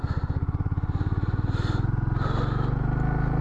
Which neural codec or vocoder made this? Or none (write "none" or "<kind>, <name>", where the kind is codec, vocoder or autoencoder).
none